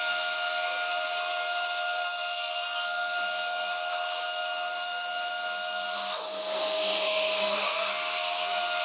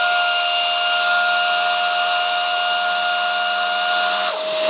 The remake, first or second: first